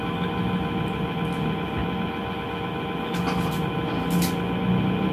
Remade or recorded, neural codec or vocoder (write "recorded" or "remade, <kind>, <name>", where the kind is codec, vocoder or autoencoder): recorded